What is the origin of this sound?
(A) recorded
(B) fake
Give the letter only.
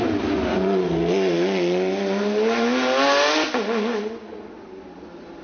A